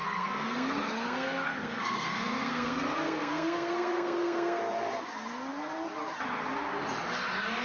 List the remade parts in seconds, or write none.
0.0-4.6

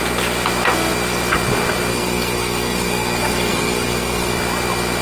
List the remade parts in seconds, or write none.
1.9-4.3

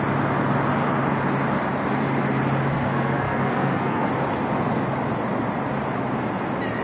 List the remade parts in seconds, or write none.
2.7-4.1